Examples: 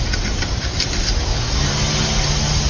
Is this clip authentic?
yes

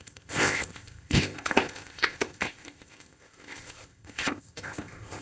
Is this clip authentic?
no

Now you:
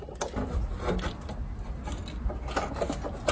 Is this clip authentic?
yes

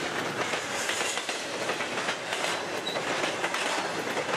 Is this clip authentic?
yes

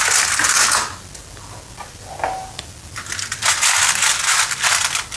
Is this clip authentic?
yes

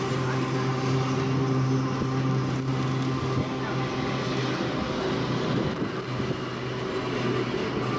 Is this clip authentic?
yes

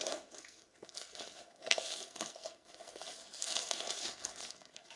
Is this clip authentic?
no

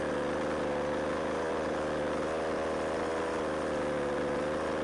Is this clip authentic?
yes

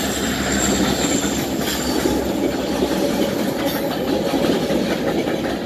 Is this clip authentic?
yes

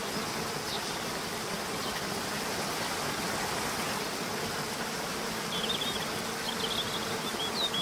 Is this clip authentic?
yes